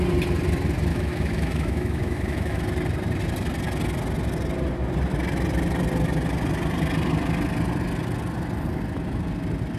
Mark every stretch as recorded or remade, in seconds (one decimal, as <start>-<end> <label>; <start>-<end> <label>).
0.0-0.9 recorded; 0.9-2.6 remade; 2.6-9.8 recorded